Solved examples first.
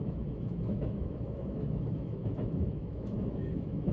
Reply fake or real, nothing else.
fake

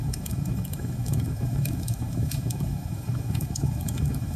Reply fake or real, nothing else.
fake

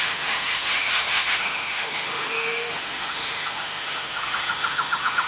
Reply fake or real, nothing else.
fake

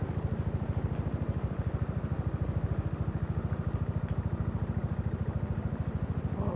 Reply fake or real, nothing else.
real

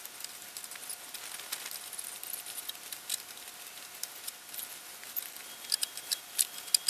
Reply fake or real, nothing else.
real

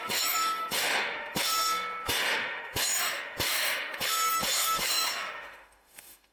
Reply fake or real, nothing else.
fake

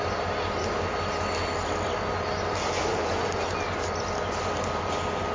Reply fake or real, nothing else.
real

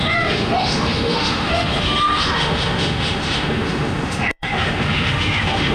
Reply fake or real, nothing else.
fake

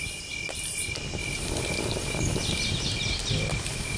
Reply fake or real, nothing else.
real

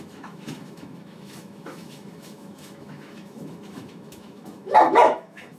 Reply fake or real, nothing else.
fake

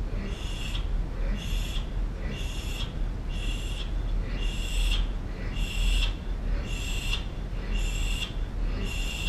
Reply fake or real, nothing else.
real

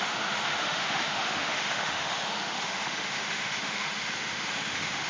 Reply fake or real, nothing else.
fake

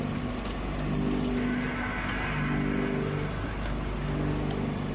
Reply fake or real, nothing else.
real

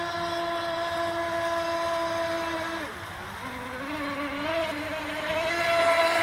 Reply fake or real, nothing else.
real